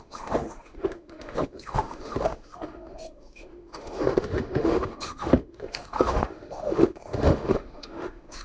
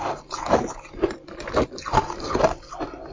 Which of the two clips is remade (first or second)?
first